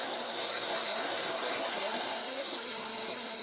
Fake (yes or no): yes